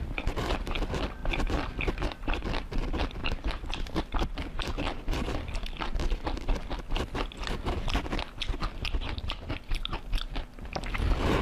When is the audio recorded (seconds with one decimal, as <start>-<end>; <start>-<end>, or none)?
0.0-3.2; 4.0-11.4